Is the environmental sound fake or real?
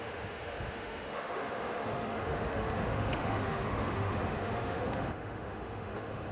fake